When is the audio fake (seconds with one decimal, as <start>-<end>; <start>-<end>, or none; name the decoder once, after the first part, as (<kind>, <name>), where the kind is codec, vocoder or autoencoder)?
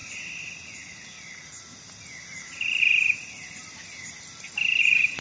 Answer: 0.7-1.7 (vocoder, Vocos); 4.8-5.2